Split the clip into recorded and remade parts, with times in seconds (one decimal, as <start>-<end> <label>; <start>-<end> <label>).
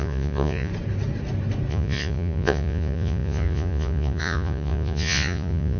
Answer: 0.0-0.7 remade; 0.7-1.7 recorded; 1.7-5.8 remade